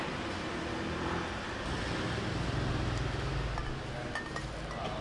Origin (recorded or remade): recorded